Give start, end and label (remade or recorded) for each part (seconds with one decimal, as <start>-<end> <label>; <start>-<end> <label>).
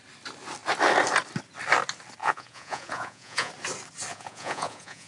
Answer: 0.0-2.2 recorded; 2.2-3.5 remade; 3.5-4.1 recorded; 4.1-5.1 remade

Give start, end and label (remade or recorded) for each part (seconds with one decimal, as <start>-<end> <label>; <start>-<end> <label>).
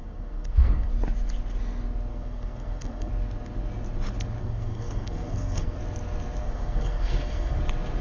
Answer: 0.0-0.9 remade; 0.9-2.1 recorded; 2.1-3.1 remade; 3.1-4.4 recorded; 4.4-5.8 remade; 5.8-6.4 recorded; 6.4-7.6 remade; 7.6-8.0 recorded